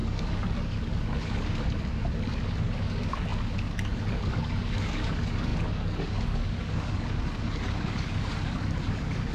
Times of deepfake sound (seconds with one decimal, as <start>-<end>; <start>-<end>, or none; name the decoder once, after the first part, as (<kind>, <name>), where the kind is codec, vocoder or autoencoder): 0.0-9.3 (codec, DAC)